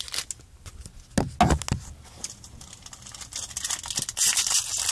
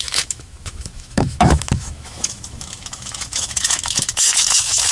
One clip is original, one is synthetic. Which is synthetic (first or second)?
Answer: second